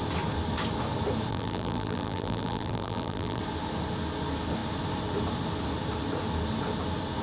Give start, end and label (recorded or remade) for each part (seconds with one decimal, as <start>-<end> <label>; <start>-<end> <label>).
0.0-1.3 recorded; 1.3-3.4 remade; 3.4-7.2 recorded